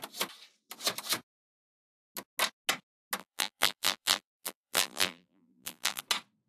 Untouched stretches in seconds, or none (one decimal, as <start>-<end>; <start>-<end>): 0.0-3.2; 6.0-6.5

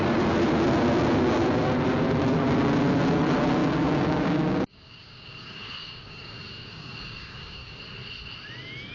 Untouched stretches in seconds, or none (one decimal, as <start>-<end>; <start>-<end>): 0.0-3.6; 7.8-8.9

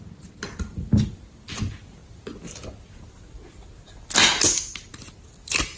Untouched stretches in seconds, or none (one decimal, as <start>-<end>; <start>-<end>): 0.0-5.8

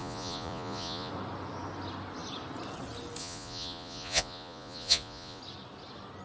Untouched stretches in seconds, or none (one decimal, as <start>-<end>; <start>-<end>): 1.1-3.2; 5.4-6.2

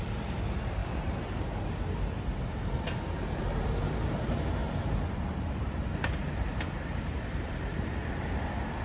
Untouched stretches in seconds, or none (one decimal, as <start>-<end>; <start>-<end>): 0.0-0.8; 1.5-4.6; 8.4-8.8

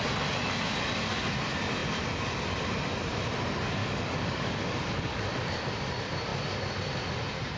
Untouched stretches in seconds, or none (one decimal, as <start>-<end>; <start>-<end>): 0.0-3.8; 5.2-7.6

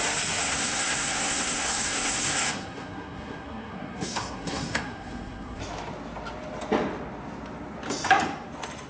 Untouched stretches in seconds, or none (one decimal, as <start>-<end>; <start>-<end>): 0.0-0.4; 5.6-8.9